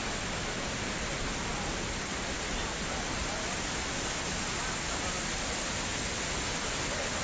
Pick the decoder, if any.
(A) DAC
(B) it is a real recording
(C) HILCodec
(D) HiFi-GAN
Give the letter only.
B